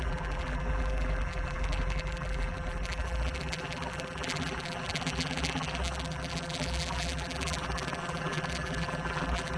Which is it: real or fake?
fake